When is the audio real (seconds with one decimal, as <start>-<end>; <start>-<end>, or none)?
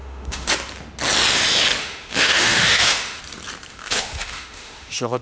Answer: 0.5-1.8; 3.2-3.7